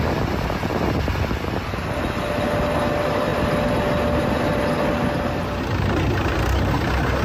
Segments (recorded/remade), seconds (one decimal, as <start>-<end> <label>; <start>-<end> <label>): 0.0-7.2 recorded